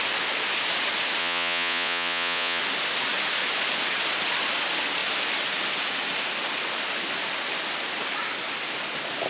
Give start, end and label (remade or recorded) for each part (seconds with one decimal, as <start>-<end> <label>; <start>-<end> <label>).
0.0-1.2 recorded; 1.2-2.6 remade; 2.6-9.3 recorded